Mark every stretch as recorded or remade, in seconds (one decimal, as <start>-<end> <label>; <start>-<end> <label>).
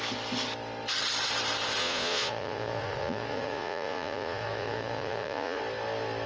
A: 0.0-1.8 recorded; 1.8-5.6 remade; 5.6-6.3 recorded